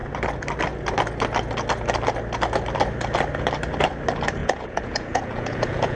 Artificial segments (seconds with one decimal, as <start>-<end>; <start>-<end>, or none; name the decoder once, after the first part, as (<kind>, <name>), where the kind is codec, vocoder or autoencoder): 4.4-6.0 (vocoder, Vocos)